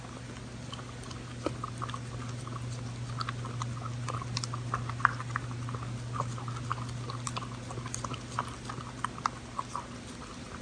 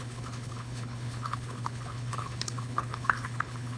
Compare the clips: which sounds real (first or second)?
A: first